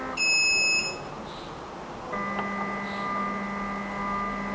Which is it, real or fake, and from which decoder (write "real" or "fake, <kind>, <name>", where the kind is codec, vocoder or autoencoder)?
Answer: real